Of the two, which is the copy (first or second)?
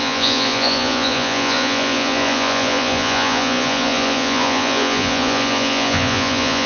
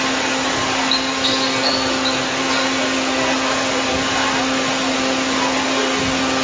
first